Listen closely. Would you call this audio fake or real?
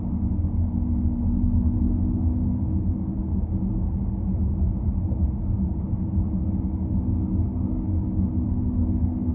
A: real